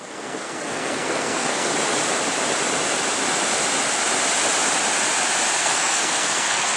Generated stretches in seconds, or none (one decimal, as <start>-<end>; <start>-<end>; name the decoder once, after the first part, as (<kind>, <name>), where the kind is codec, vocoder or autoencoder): 0.0-1.7 (codec, SNAC); 5.6-6.8